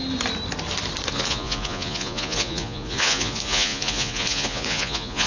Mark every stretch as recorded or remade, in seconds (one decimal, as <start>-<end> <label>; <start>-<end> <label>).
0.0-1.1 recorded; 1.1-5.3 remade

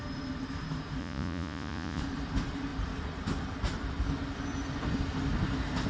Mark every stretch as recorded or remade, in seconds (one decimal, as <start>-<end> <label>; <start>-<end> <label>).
0.0-1.0 recorded; 1.0-2.0 remade; 2.0-5.9 recorded

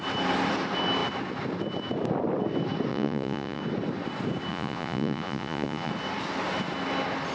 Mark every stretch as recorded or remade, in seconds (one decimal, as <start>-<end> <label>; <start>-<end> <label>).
0.0-2.9 recorded; 2.9-3.6 remade; 3.6-4.5 recorded; 4.5-5.9 remade; 5.9-7.3 recorded

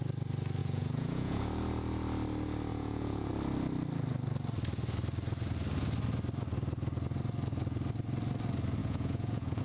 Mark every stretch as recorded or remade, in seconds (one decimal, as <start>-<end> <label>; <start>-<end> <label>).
0.0-0.6 recorded; 0.6-1.4 remade; 1.4-2.7 recorded; 2.7-3.3 remade; 3.3-8.8 recorded; 8.8-9.6 remade

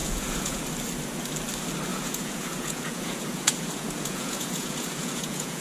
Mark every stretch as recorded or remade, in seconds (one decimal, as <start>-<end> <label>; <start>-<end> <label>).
0.0-0.6 remade; 0.6-1.9 recorded; 1.9-5.6 remade

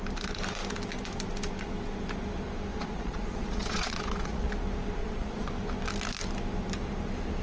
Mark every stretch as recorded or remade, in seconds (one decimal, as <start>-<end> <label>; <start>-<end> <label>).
0.0-2.7 recorded; 2.7-4.5 remade; 4.5-5.0 recorded; 5.0-5.5 remade; 5.5-7.4 recorded